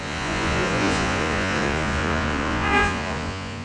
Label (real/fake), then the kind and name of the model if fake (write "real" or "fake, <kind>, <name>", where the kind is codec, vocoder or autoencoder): fake, vocoder, Vocos